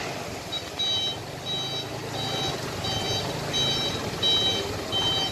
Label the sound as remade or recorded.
recorded